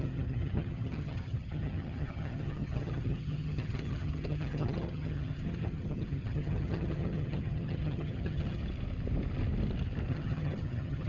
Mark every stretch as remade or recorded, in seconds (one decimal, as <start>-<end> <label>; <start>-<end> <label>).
0.0-8.6 remade; 8.6-10.1 recorded; 10.1-11.1 remade